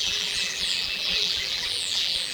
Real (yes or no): no